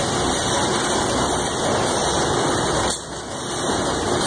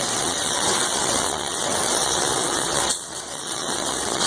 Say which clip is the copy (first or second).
second